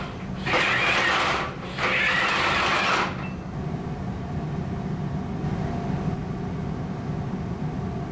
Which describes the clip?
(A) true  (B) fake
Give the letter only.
A